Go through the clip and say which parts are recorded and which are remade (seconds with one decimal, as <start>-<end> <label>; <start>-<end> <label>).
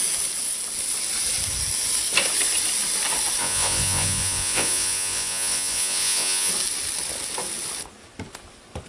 0.0-3.4 recorded; 3.4-6.5 remade; 6.5-8.9 recorded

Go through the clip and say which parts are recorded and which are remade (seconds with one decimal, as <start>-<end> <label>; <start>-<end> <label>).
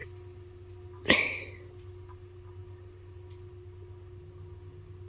0.0-5.1 recorded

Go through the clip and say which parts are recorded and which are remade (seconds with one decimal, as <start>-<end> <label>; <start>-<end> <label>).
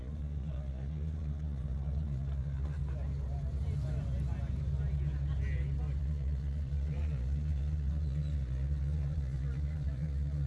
0.0-2.8 remade; 2.8-6.0 recorded; 6.0-10.5 remade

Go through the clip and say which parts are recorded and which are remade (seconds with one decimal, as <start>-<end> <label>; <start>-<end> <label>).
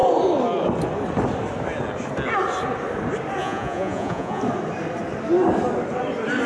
0.0-3.4 recorded; 3.4-4.4 remade; 4.4-6.5 recorded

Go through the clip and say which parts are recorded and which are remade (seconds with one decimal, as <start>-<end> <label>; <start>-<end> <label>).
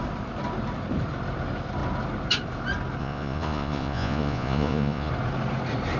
0.0-3.0 recorded; 3.0-5.1 remade; 5.1-6.0 recorded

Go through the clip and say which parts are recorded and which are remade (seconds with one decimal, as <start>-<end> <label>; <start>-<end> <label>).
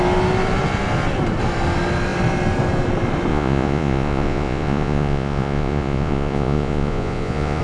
0.0-3.3 recorded; 3.3-7.6 remade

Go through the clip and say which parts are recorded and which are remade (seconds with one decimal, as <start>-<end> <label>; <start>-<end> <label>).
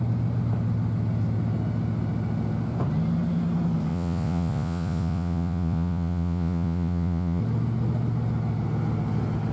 0.0-3.9 recorded; 3.9-7.4 remade; 7.4-9.5 recorded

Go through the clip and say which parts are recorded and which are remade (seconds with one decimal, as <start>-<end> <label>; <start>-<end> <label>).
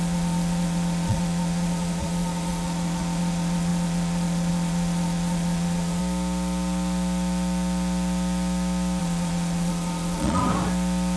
0.0-6.0 remade; 6.0-9.0 recorded; 9.0-10.4 remade; 10.4-11.2 recorded